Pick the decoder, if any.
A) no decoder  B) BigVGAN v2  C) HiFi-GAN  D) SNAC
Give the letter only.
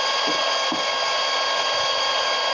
A